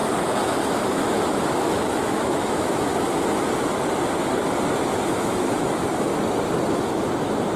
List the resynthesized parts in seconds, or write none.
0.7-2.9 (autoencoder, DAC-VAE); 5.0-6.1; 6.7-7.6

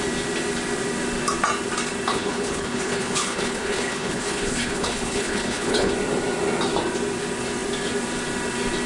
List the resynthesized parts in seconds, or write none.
2.1-5.9 (codec, HILCodec)

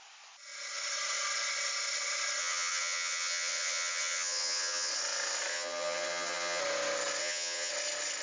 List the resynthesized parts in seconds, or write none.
2.4-4.9 (vocoder, HiFi-GAN); 5.5-6.6; 7.2-7.7

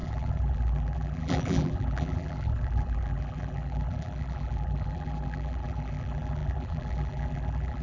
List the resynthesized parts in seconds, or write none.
0.0-7.8 (vocoder, BigVGAN v2)

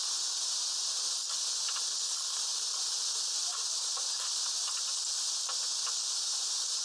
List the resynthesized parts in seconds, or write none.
none

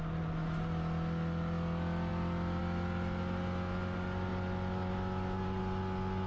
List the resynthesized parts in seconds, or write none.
none

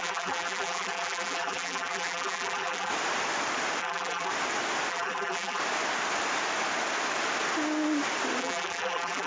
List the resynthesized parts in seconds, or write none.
0.0-2.9 (vocoder, BigVGAN v2); 3.8-4.3; 4.9-5.6; 8.4-9.3

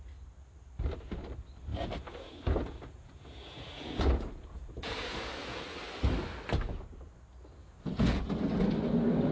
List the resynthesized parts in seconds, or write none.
1.7-5.6 (vocoder, Vocos); 7.6-8.2